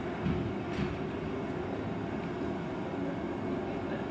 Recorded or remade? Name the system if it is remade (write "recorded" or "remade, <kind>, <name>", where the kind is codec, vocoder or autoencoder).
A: recorded